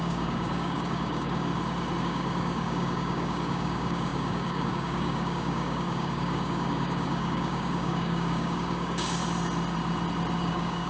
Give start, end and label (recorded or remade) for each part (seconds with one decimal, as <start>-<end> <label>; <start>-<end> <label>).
0.0-1.5 remade; 1.5-2.0 recorded; 2.0-9.2 remade; 9.2-10.4 recorded; 10.4-10.9 remade